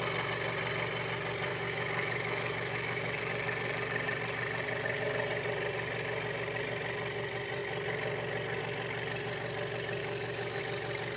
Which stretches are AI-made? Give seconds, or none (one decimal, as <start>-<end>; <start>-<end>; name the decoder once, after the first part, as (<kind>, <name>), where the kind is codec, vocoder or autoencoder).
1.5-3.2 (autoencoder, DAC-VAE); 10.0-10.6